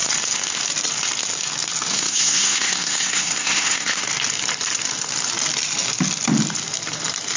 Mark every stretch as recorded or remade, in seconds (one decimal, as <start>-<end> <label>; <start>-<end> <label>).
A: 0.0-1.9 recorded; 1.9-4.0 remade; 4.0-7.4 recorded